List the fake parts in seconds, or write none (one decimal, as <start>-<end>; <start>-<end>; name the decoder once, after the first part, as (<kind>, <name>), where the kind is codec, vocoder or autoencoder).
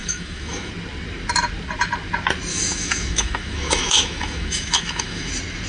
0.0-0.7 (autoencoder, DAC-VAE); 2.5-5.3